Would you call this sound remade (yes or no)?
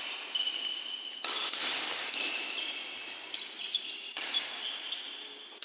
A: no